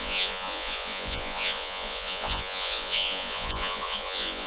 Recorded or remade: remade